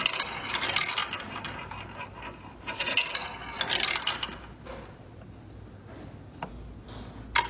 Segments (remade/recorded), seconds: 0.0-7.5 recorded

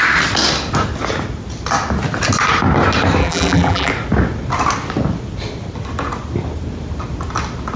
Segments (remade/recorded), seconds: 0.0-3.2 recorded; 3.2-3.9 remade; 3.9-7.8 recorded

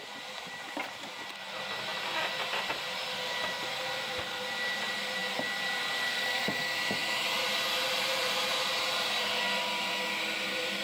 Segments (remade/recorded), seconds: 0.0-7.0 recorded; 7.0-9.4 remade; 9.4-10.8 recorded

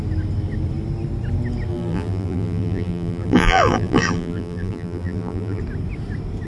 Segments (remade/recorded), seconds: 0.0-1.7 recorded; 1.7-5.6 remade; 5.6-6.5 recorded